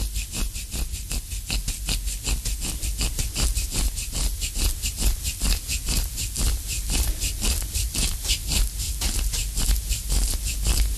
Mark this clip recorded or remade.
recorded